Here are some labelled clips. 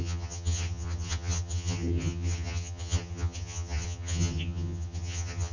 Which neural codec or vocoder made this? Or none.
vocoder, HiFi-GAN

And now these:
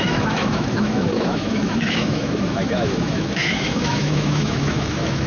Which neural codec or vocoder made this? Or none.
autoencoder, DAC-VAE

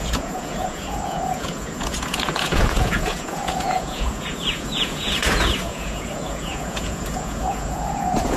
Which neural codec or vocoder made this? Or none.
vocoder, Vocos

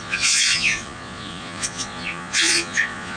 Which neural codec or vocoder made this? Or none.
vocoder, Vocos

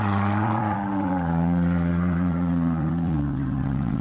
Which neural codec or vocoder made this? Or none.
vocoder, WaveNeXt